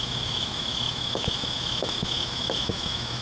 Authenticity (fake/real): fake